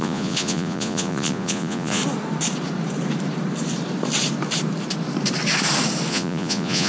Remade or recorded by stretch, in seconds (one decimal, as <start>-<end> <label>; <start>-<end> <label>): 0.0-2.0 remade; 2.0-6.1 recorded; 6.1-6.9 remade